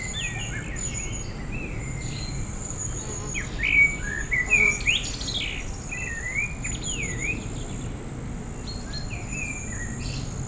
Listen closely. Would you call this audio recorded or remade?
recorded